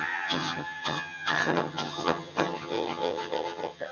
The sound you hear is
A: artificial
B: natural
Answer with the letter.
A